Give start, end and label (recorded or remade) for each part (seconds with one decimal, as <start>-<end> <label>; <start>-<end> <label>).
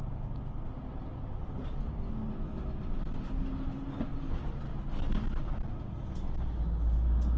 0.0-7.4 recorded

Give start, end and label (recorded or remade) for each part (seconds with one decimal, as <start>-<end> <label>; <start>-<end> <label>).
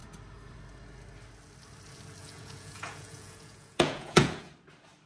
0.0-2.2 recorded; 2.2-4.5 remade; 4.5-5.1 recorded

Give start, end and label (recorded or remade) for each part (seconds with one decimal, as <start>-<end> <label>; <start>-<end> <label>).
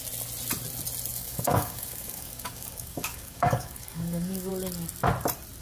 0.0-1.1 recorded; 1.1-4.5 remade; 4.5-5.6 recorded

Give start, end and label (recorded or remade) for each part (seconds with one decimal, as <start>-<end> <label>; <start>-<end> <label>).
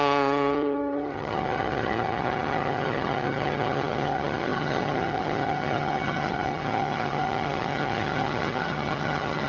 0.0-9.5 remade